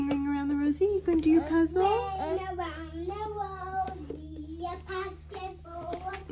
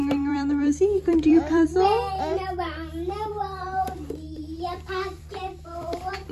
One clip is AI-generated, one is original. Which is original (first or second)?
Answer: first